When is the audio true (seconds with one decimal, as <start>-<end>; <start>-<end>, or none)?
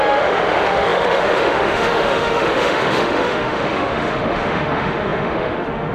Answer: none